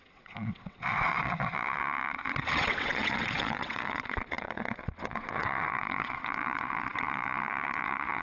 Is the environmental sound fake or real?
fake